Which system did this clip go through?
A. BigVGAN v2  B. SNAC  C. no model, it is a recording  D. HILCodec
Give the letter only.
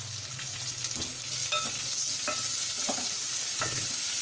C